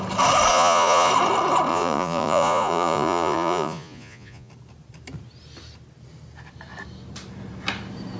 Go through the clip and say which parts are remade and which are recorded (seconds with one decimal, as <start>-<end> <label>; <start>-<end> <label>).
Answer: 0.0-0.5 recorded; 0.5-1.1 remade; 1.1-1.7 recorded; 1.7-4.5 remade; 4.5-8.2 recorded